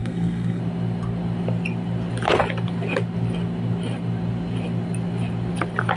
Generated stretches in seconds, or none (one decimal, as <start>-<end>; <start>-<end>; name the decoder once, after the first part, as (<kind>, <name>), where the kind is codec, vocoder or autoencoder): 0.0-0.6 (codec, SNAC)